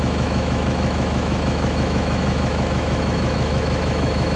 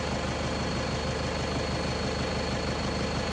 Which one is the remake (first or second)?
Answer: first